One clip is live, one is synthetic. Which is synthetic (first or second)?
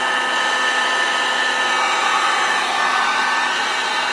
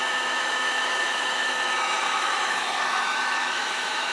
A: second